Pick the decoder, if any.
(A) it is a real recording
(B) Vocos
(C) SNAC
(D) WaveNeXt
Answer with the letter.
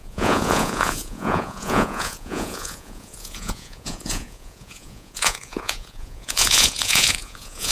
B